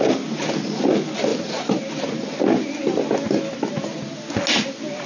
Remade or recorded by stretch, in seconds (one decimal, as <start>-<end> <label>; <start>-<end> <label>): 0.0-1.3 recorded; 1.3-1.8 remade; 1.8-5.1 recorded